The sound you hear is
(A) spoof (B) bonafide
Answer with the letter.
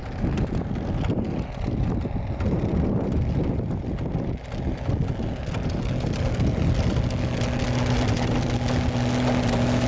B